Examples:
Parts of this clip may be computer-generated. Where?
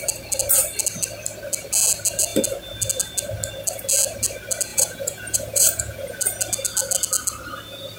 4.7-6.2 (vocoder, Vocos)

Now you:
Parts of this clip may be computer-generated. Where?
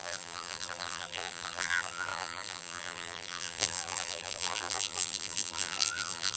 0.0-6.4 (vocoder, BigVGAN v2)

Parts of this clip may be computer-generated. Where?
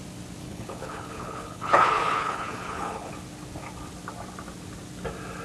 0.4-3.1 (codec, HILCodec)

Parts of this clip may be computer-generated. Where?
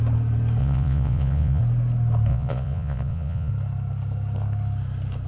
0.6-1.6 (vocoder, Vocos); 2.3-3.5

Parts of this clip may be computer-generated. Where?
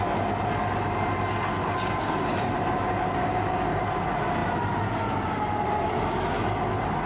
1.6-2.4 (codec, DAC); 3.2-3.8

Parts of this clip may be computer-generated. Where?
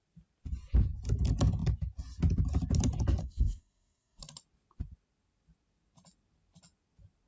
3.2-4.2 (codec, SNAC)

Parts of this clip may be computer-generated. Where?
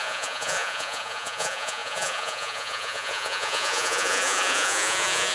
0.0-5.3 (vocoder, Vocos)